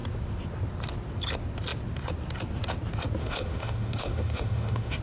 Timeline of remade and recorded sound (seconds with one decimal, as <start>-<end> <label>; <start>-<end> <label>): 0.0-3.2 recorded; 3.2-5.0 remade